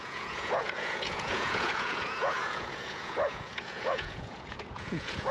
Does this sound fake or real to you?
fake